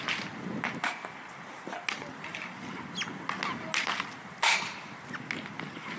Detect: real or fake real